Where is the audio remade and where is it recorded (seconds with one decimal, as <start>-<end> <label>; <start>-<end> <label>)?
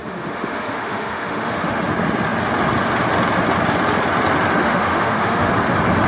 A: 0.0-1.8 remade; 1.8-4.6 recorded; 4.6-5.5 remade; 5.5-6.1 recorded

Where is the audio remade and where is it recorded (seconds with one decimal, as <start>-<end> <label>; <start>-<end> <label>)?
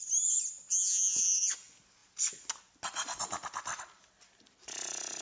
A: 0.0-0.7 recorded; 0.7-1.5 remade; 1.5-5.2 recorded